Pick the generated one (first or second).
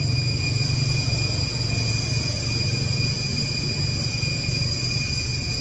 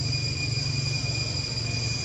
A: first